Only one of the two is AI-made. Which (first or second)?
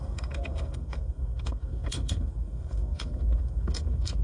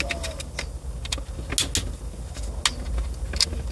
first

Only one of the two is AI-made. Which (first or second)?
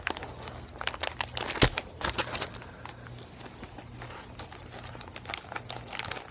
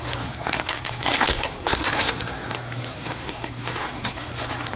second